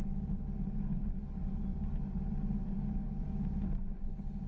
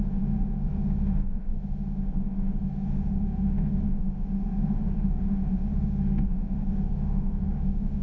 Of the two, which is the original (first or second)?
first